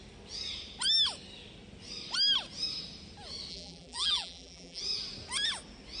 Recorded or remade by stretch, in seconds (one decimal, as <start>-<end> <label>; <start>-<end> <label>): 0.0-3.5 recorded; 3.5-4.8 remade; 4.8-6.0 recorded

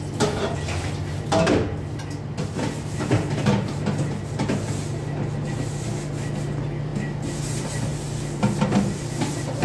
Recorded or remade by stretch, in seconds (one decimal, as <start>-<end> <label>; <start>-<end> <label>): 0.0-6.9 recorded; 6.9-7.4 remade; 7.4-9.6 recorded

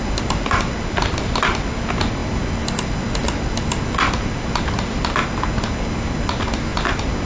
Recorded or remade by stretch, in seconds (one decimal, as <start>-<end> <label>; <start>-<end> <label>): 0.0-7.3 recorded

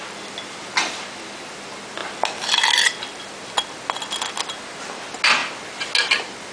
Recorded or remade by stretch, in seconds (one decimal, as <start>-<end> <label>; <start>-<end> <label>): 0.0-6.5 recorded

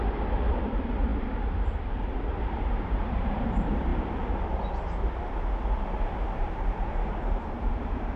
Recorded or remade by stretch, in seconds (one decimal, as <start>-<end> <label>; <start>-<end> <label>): 0.0-3.9 remade; 3.9-6.4 recorded; 6.4-8.2 remade

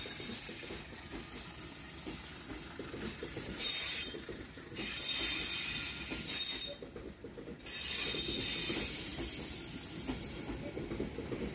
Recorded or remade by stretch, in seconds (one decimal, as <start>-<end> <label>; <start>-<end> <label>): 0.0-3.2 recorded; 3.2-5.0 remade; 5.0-11.5 recorded

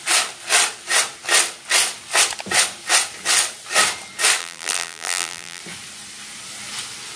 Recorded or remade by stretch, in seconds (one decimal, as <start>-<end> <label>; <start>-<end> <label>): 0.0-4.4 recorded; 4.4-5.6 remade; 5.6-7.2 recorded

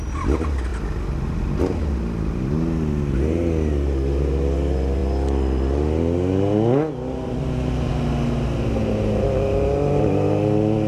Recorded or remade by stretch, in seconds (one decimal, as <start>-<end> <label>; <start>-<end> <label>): 0.0-10.9 recorded